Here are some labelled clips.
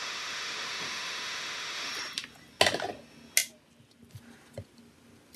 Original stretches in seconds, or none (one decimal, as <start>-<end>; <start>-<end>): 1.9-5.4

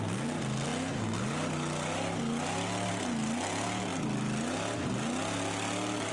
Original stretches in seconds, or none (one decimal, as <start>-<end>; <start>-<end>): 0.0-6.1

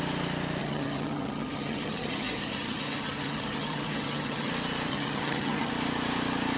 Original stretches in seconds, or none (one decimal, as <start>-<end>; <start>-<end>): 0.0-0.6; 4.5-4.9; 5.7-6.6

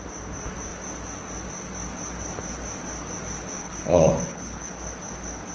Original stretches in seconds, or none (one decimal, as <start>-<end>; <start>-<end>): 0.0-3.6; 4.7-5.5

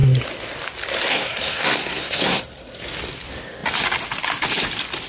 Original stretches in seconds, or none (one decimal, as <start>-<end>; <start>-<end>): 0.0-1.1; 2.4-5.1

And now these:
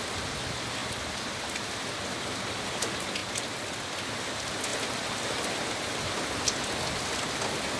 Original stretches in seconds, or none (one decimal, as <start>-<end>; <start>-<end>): 0.0-7.8